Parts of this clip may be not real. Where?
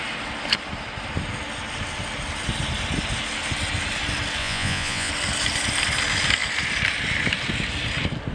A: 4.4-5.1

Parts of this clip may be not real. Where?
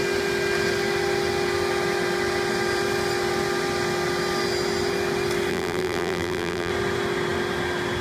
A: 5.5-6.7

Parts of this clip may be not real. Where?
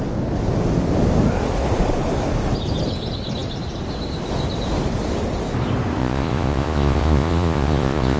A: 6.0-8.2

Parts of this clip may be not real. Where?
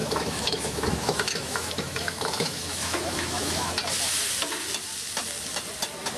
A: 0.0-3.7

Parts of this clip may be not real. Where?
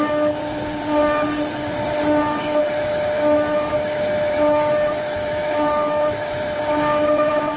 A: 2.0-6.6